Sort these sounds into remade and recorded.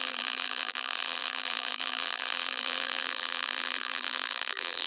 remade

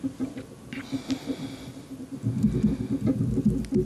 recorded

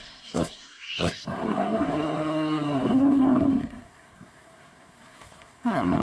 remade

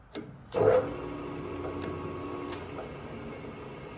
recorded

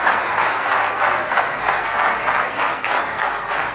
remade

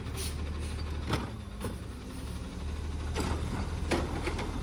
recorded